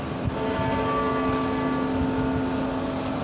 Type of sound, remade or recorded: recorded